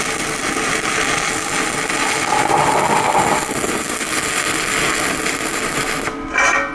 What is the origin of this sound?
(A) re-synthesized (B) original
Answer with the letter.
B